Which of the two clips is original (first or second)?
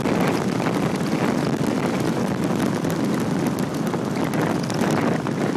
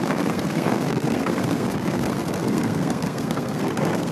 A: first